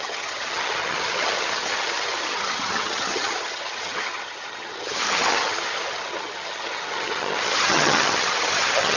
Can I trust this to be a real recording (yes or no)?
no